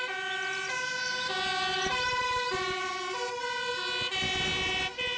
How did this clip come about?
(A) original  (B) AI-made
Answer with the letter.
A